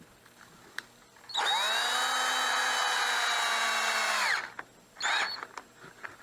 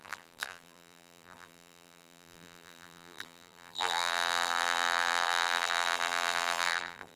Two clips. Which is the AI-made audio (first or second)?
second